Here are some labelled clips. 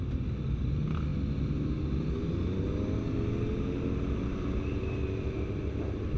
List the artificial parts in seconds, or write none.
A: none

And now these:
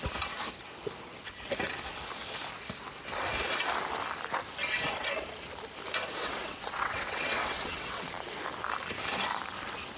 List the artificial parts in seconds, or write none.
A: 6.2-8.1 (vocoder, WaveNeXt)

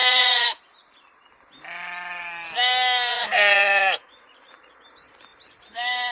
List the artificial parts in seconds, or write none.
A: 0.0-0.6 (vocoder, Vocos); 3.1-4.5

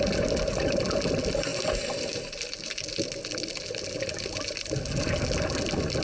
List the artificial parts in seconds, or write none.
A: none